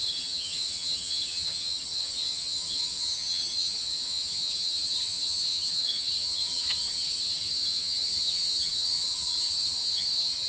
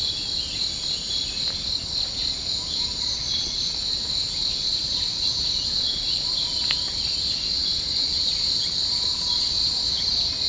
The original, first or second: second